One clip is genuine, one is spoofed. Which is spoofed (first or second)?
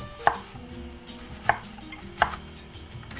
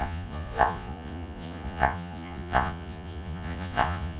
second